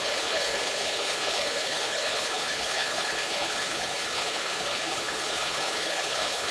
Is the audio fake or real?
fake